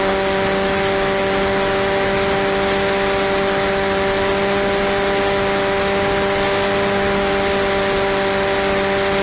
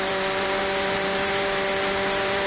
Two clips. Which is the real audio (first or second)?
first